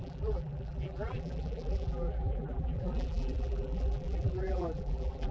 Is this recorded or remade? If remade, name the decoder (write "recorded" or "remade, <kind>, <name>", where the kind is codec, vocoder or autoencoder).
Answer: remade, vocoder, BigVGAN v2